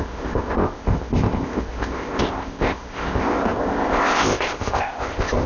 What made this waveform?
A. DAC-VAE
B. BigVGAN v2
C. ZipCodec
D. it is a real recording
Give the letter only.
C